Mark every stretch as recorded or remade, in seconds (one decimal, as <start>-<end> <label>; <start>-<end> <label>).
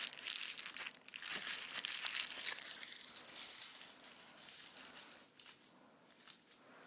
0.0-6.9 recorded